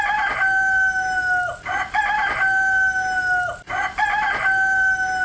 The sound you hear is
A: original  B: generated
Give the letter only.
A